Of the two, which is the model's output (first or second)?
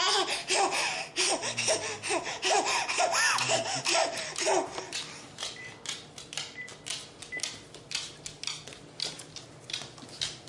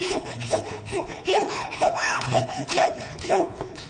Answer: second